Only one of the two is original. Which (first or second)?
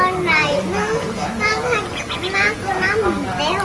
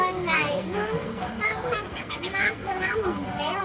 first